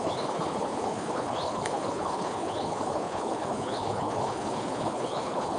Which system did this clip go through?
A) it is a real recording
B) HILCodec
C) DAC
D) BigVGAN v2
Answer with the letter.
B